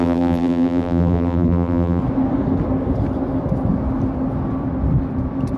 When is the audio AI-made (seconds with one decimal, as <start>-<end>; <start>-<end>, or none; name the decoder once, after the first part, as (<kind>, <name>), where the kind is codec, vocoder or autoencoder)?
0.0-2.0 (vocoder, BigVGAN v2)